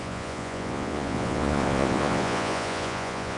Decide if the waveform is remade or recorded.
remade